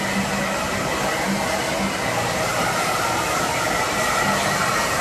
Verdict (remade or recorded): recorded